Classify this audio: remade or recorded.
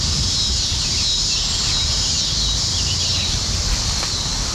recorded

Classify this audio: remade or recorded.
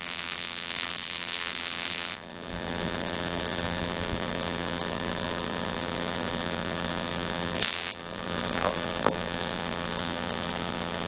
remade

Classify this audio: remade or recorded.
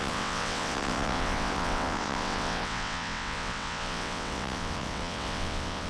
remade